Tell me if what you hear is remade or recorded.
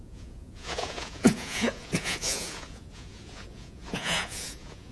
remade